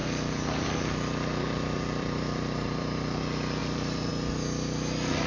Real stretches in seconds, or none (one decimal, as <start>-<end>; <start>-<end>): 3.2-3.6; 4.1-5.3